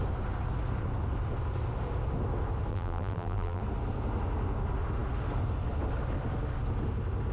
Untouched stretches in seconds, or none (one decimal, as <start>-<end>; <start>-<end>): 0.0-2.7; 3.6-7.3